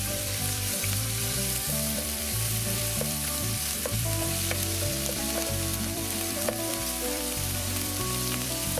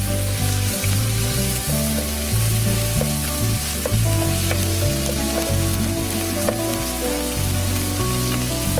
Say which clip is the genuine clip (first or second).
second